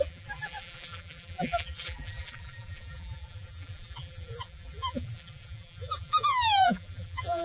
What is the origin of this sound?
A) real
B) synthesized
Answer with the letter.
B